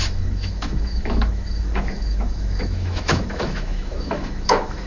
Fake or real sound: fake